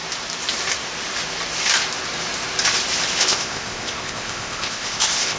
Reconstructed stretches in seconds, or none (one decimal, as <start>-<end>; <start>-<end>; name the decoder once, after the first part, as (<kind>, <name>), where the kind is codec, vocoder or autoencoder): 3.2-5.4 (codec, ZipCodec)